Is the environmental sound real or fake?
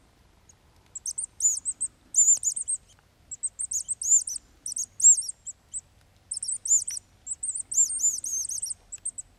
real